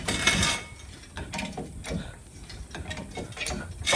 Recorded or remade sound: recorded